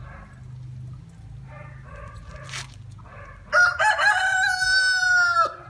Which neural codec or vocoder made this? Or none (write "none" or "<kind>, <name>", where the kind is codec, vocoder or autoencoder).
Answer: none